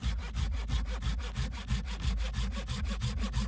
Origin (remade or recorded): recorded